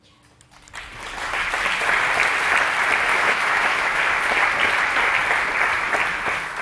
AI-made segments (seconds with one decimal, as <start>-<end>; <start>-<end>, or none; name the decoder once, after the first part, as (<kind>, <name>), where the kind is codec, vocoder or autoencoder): 3.1-4.0 (autoencoder, DAC-VAE)